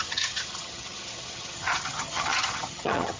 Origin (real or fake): fake